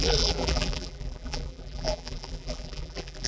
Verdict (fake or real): fake